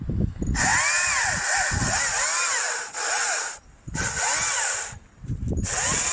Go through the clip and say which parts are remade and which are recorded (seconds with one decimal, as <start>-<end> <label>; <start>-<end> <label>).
0.0-6.1 recorded